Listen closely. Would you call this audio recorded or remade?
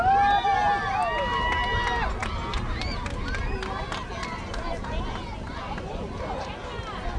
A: recorded